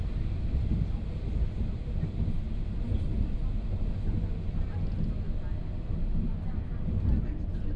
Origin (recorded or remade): recorded